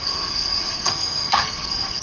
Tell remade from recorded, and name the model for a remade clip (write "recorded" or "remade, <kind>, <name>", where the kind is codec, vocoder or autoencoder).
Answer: remade, codec, SNAC